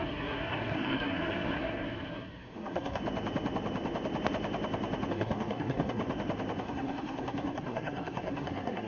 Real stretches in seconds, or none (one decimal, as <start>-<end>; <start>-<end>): 3.0-5.1; 6.0-6.6